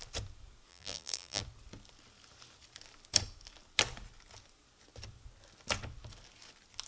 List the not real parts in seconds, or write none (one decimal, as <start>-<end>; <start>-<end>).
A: 0.7-1.4